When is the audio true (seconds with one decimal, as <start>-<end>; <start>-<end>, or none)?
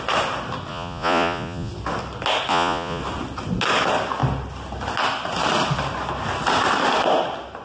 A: 0.0-0.7; 1.7-2.5; 3.0-7.6